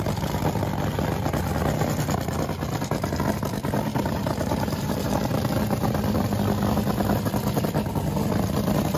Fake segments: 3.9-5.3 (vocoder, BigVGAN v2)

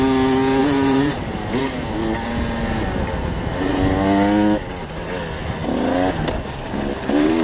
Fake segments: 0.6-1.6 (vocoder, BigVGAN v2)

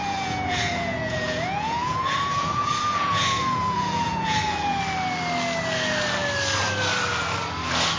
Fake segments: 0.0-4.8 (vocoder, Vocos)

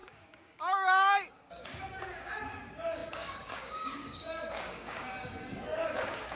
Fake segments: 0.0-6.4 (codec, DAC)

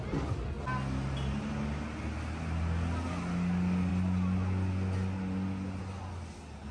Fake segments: none